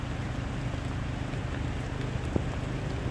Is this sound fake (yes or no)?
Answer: no